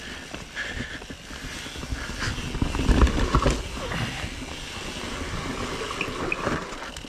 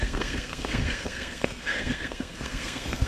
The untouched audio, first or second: first